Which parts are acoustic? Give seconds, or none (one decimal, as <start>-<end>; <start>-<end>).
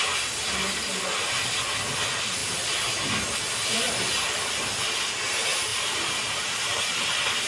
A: 0.0-5.7; 7.0-7.5